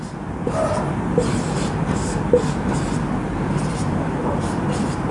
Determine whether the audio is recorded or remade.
remade